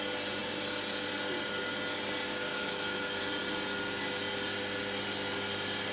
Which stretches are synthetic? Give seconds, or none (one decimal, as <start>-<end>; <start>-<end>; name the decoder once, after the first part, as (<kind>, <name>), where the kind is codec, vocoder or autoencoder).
2.5-3.2 (autoencoder, DAC-VAE)